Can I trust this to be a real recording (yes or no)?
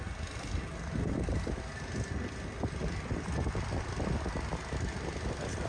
yes